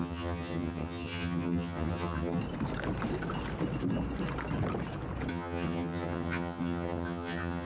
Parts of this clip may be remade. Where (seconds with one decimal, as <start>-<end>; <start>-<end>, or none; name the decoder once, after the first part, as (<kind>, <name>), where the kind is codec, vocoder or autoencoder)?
0.0-2.4 (vocoder, HiFi-GAN); 5.3-7.6